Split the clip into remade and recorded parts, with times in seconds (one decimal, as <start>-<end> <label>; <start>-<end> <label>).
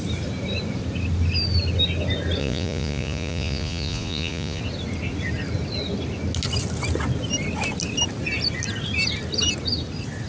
0.0-2.4 recorded; 2.4-4.6 remade; 4.6-10.3 recorded